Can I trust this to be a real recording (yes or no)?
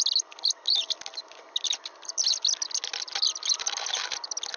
yes